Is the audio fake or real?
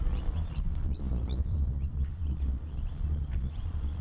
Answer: fake